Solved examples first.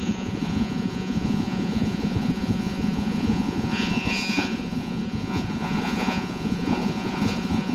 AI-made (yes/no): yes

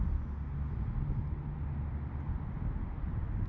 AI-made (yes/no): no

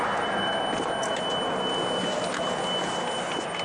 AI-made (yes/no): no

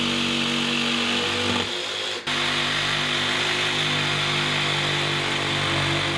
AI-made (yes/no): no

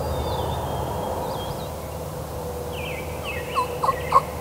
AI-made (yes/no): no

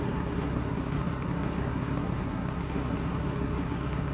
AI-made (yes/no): yes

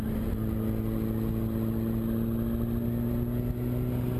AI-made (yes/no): no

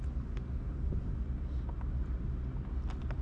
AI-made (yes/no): no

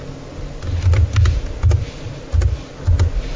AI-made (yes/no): no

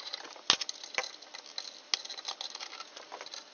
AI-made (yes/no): no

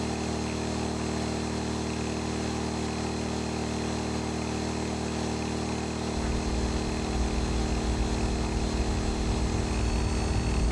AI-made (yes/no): no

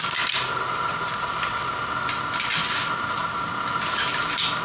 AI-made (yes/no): no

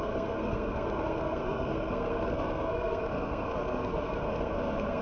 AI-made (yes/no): yes